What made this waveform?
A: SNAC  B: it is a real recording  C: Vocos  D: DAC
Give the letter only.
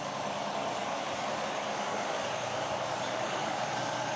D